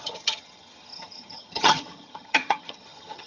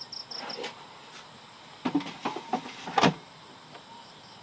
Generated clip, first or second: first